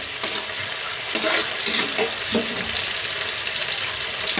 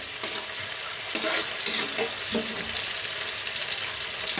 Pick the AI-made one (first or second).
first